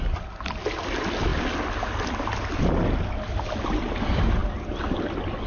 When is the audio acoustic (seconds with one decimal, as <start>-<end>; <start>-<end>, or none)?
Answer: 0.0-5.5